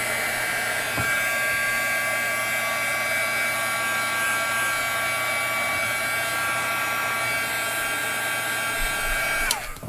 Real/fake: real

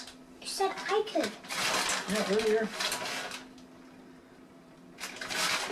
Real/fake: real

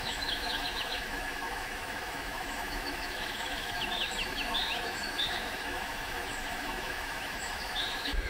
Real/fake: fake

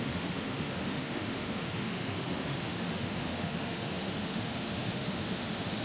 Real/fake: fake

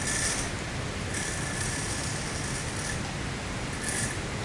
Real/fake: real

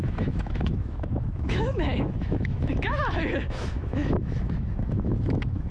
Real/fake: fake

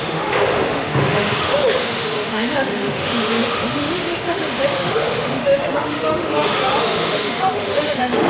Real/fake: fake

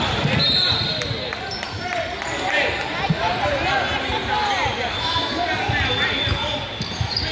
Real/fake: real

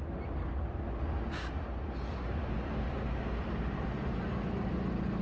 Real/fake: real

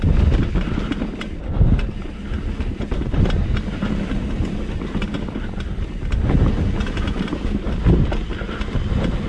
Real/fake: real